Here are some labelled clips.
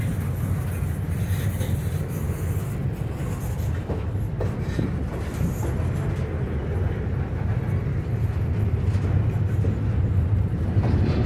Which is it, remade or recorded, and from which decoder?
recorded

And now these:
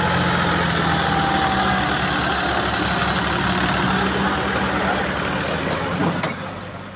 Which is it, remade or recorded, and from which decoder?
recorded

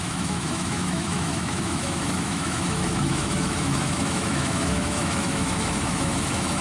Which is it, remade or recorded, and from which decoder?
remade, autoencoder, DAC-VAE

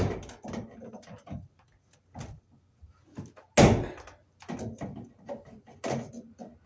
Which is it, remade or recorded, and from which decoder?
recorded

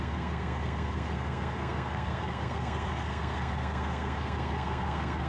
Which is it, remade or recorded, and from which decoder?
remade, codec, SNAC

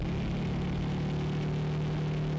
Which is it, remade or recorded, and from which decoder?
recorded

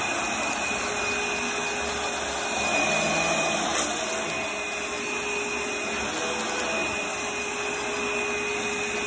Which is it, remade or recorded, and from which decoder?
recorded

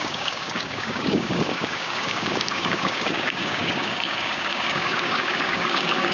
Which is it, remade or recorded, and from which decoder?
remade, codec, DAC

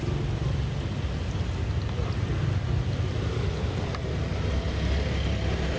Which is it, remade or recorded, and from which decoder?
recorded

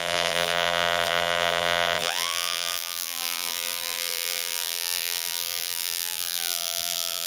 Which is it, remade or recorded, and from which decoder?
remade, vocoder, BigVGAN v2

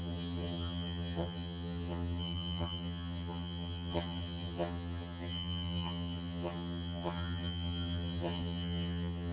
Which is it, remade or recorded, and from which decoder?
remade, vocoder, HiFi-GAN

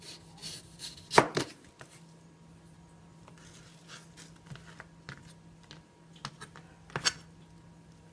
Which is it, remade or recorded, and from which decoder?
recorded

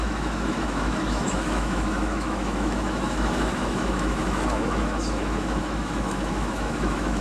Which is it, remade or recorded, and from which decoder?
remade, autoencoder, DAC-VAE